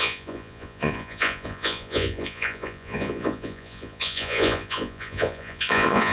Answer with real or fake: fake